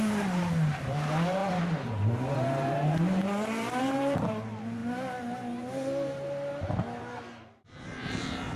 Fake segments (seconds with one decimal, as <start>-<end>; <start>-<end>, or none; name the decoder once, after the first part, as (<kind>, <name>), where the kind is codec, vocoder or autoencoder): 0.0-4.8 (vocoder, BigVGAN v2); 7.0-8.6